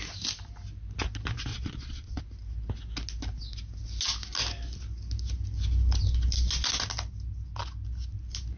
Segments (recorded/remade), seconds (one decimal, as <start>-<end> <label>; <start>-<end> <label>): 0.0-1.5 recorded; 1.5-2.2 remade; 2.2-8.6 recorded